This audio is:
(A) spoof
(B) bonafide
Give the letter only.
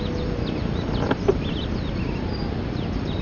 B